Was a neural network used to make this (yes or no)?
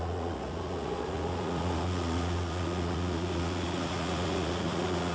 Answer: yes